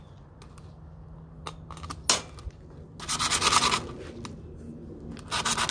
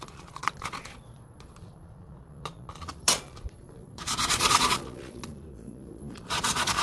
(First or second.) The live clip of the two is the first